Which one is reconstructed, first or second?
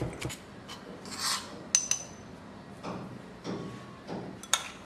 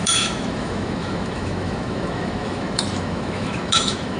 second